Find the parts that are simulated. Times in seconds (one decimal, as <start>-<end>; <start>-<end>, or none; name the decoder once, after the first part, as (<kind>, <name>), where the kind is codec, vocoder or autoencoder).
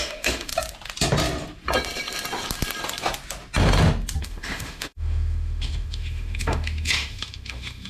0.0-0.5 (autoencoder, DAC-VAE); 4.2-7.9